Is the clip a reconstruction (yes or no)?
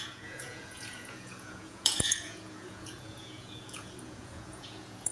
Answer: yes